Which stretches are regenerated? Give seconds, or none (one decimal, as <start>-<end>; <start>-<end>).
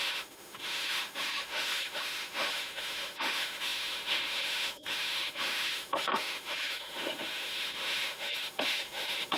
0.0-9.4